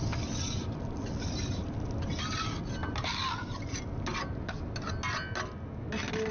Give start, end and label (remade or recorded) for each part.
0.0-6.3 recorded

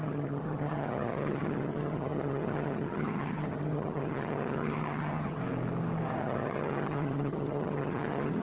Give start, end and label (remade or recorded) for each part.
0.0-5.4 remade; 5.4-6.2 recorded; 6.2-8.4 remade

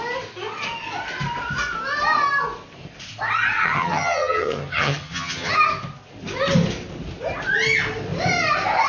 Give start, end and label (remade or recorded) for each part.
0.0-3.6 recorded; 3.6-5.5 remade; 5.5-8.9 recorded

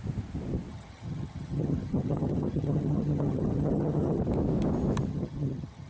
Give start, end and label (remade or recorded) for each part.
0.0-0.7 recorded; 0.7-4.2 remade; 4.2-5.1 recorded; 5.1-5.9 remade

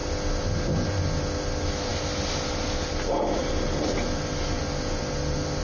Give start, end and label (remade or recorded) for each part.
0.0-5.6 recorded